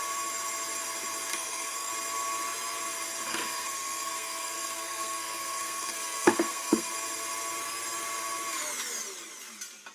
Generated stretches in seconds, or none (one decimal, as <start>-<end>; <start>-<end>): 1.3-1.9; 3.3-6.9